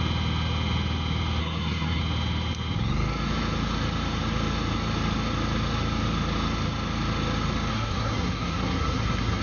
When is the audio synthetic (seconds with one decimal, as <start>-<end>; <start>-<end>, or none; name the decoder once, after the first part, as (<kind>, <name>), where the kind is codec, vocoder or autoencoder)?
1.4-2.0 (codec, SNAC); 7.7-9.4